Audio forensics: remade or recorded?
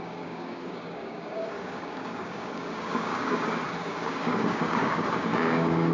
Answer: remade